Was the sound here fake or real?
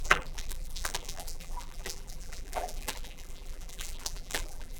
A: fake